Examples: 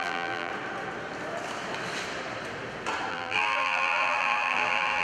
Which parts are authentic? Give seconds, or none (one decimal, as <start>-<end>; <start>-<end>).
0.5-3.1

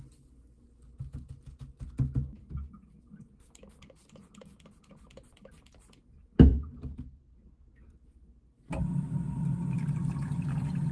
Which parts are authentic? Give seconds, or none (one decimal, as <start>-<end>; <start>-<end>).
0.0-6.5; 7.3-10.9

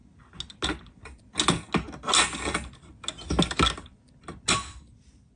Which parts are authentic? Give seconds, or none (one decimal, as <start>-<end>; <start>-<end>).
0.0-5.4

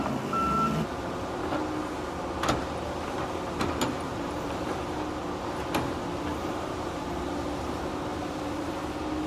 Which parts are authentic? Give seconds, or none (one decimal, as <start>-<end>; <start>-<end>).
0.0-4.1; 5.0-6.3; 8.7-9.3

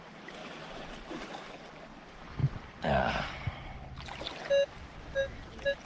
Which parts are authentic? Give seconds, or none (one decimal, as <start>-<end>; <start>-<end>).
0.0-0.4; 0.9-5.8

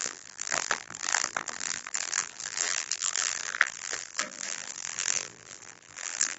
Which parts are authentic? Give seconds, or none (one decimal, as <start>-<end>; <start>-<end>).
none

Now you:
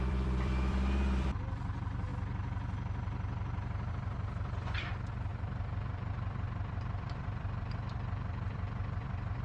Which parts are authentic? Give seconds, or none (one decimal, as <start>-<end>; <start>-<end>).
2.1-3.9

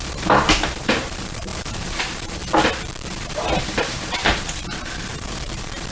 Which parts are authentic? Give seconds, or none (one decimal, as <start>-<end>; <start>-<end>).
2.4-3.1